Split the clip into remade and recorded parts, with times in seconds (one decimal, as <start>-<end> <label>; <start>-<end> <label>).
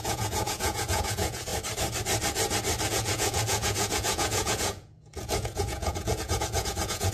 0.0-1.5 remade; 1.5-2.9 recorded; 2.9-7.1 remade